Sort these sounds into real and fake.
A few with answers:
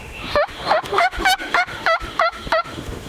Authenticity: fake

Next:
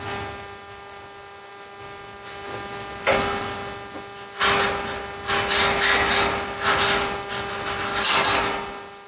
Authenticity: real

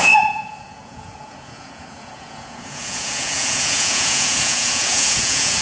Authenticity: fake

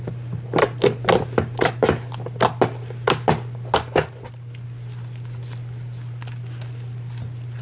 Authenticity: real